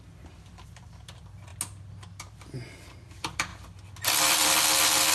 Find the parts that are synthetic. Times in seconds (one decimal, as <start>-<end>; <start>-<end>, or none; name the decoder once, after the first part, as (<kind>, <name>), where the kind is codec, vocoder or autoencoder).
0.0-1.5 (vocoder, BigVGAN v2); 2.2-3.5; 4.2-5.1